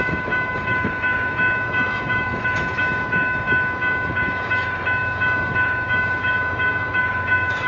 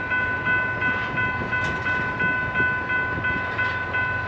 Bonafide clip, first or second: second